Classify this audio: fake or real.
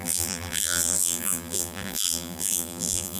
fake